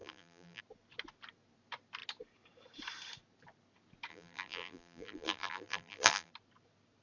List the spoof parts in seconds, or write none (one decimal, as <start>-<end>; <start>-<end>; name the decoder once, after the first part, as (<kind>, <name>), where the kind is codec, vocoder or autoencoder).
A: 0.0-0.6 (vocoder, BigVGAN v2); 4.1-6.3